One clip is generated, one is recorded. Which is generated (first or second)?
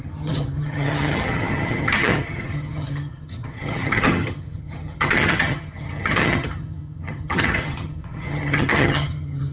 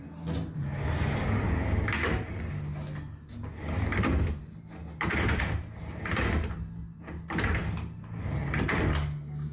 first